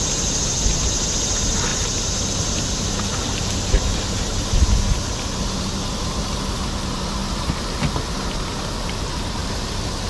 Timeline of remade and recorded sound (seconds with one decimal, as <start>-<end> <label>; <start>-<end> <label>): 0.0-9.4 recorded; 9.4-10.1 remade